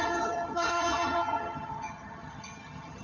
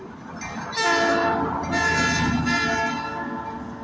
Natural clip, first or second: second